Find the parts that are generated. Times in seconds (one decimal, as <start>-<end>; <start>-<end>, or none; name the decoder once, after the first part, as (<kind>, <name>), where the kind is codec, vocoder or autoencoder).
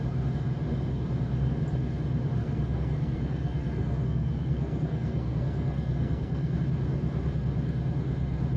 2.4-6.6 (codec, SNAC)